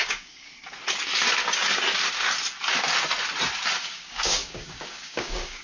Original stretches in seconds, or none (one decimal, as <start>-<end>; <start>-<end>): 0.5-3.8